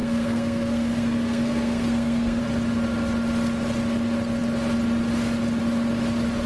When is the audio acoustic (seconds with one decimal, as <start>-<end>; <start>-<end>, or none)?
2.4-6.5